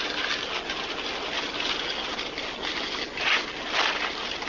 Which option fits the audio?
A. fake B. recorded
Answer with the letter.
B